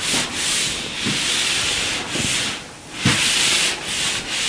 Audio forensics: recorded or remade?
recorded